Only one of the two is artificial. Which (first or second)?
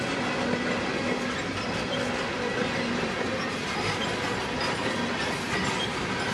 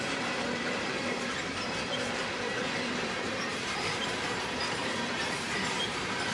second